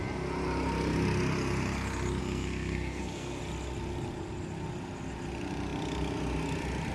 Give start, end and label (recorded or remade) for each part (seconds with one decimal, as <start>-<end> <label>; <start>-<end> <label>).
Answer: 0.0-2.2 recorded; 2.2-3.4 remade; 3.4-6.9 recorded